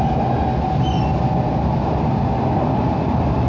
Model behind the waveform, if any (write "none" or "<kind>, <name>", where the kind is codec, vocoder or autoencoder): none